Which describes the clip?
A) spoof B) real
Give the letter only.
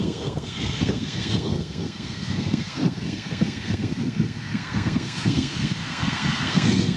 A